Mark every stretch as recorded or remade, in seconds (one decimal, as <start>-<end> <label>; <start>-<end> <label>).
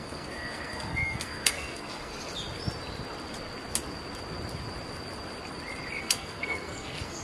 0.0-2.1 remade; 2.1-6.0 recorded; 6.0-7.2 remade